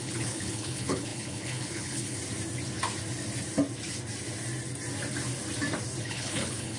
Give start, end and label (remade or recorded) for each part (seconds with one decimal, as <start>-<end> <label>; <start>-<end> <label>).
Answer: 0.0-2.2 remade; 2.2-6.0 recorded; 6.0-6.8 remade